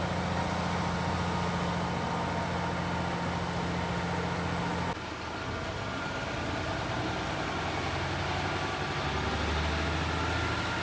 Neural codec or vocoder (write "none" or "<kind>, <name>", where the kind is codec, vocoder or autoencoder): none